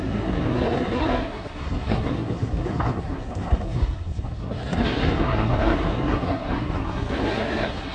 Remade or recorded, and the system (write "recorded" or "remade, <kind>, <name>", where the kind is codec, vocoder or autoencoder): remade, codec, SNAC